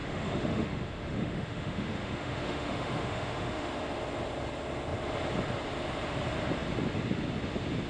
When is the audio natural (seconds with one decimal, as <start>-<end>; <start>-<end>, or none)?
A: 3.7-7.9